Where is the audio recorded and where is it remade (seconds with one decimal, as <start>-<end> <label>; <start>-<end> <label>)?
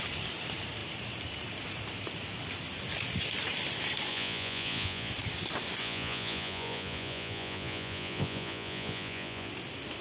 0.0-4.1 recorded; 4.1-5.1 remade; 5.1-5.8 recorded; 5.8-9.5 remade; 9.5-10.0 recorded